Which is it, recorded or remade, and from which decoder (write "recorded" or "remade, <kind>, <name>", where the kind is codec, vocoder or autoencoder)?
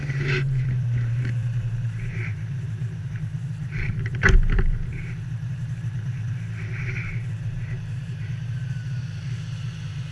remade, vocoder, BigVGAN v2